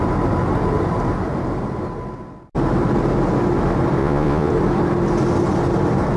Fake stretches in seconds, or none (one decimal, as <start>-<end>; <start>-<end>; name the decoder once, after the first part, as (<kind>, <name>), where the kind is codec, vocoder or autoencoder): 4.0-4.5 (vocoder, Vocos)